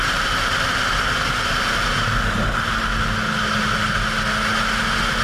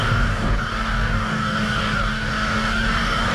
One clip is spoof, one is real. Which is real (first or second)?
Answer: first